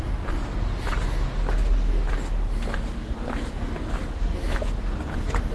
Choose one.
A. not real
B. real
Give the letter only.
B